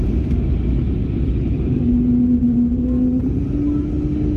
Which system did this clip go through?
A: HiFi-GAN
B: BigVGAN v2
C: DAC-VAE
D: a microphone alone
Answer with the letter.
D